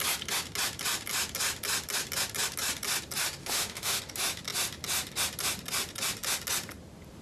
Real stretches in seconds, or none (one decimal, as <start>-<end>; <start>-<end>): 0.0-3.4; 4.0-7.2